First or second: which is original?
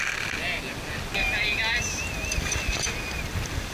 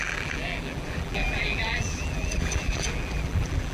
first